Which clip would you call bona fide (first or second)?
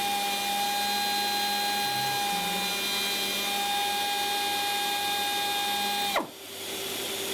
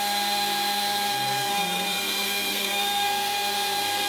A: first